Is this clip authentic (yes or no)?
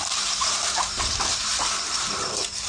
no